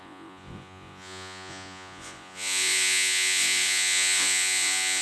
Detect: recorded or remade remade